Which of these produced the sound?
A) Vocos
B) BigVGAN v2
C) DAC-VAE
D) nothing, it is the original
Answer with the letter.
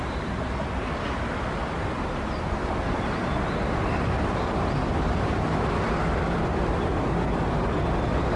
D